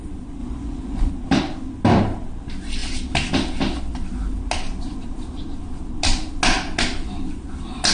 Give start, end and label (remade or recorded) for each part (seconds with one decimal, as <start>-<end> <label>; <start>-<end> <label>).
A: 0.0-0.4 recorded; 0.4-1.1 remade; 1.1-7.9 recorded